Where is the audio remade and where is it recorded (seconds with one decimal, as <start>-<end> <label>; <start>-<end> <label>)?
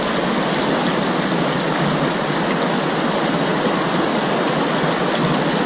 0.0-5.7 recorded